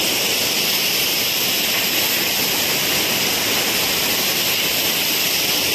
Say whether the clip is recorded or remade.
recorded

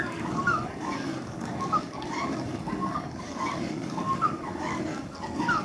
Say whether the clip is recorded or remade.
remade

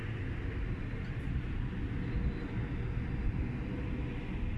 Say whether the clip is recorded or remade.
recorded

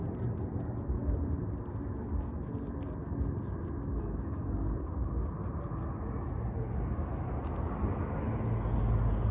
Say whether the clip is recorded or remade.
recorded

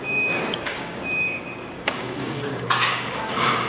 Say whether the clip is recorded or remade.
remade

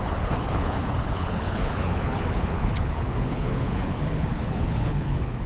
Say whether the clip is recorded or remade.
remade